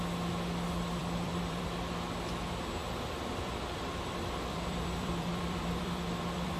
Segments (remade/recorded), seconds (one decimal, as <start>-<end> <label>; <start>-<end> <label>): 0.0-1.0 recorded; 1.0-1.6 remade; 1.6-2.8 recorded; 2.8-6.6 remade